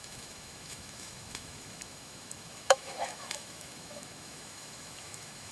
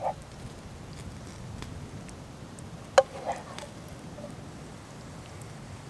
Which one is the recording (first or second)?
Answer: second